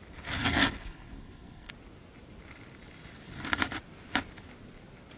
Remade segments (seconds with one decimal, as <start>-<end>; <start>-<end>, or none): 0.4-1.7